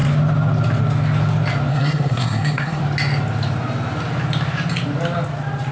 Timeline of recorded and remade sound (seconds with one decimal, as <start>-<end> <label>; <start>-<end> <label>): 0.0-1.7 recorded; 1.7-2.8 remade; 2.8-5.7 recorded